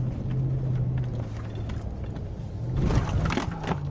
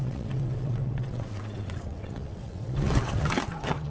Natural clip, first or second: first